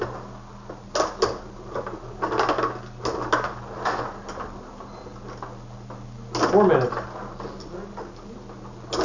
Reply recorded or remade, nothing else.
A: recorded